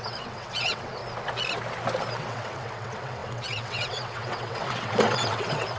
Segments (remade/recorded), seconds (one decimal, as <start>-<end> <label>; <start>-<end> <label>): 0.0-1.0 remade; 1.0-2.2 recorded; 2.2-5.8 remade